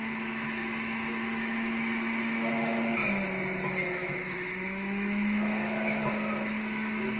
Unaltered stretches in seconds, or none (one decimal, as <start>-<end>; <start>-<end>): 3.0-3.9